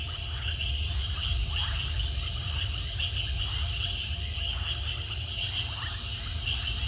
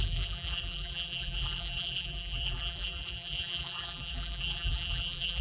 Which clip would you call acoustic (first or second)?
first